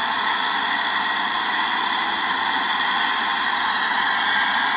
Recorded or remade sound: recorded